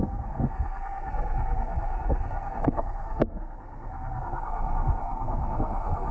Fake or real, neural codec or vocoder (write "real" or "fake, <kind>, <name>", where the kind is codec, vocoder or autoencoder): fake, codec, SNAC